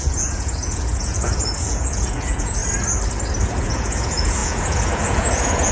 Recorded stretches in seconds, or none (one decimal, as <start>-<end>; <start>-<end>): 2.6-3.4